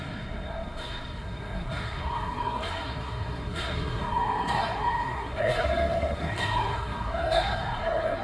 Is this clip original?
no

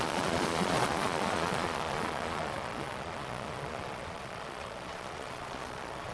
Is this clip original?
no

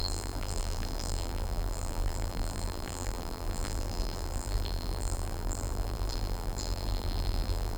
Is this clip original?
no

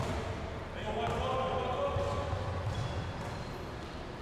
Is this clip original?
yes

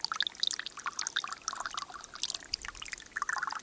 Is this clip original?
yes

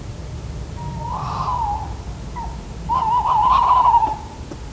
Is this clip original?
yes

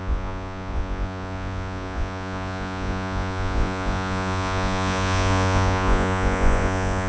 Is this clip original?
no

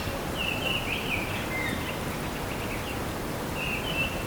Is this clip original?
yes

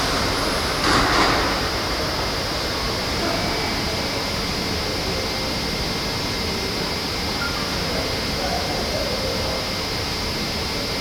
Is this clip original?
yes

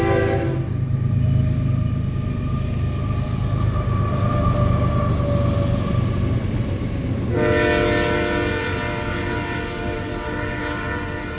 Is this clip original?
yes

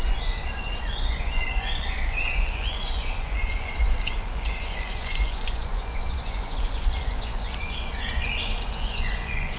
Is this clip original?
no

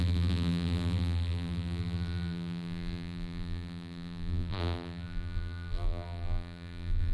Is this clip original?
no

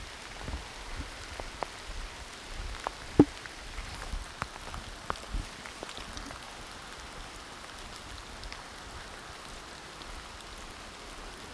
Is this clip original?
yes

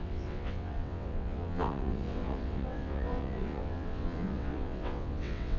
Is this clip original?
no